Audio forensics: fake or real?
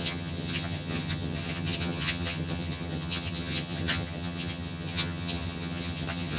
fake